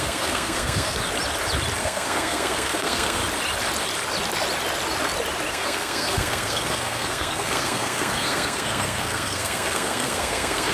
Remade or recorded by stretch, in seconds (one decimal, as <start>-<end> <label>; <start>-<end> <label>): 0.0-1.0 remade; 1.0-1.8 recorded; 1.8-3.2 remade; 3.2-5.5 recorded; 5.5-10.7 remade